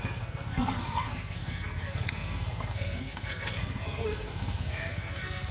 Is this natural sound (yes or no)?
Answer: no